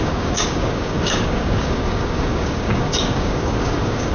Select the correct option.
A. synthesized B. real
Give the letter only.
A